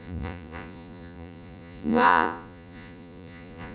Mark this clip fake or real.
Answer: fake